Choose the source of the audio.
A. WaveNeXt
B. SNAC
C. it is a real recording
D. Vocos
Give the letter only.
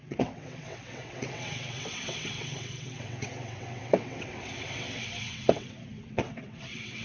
A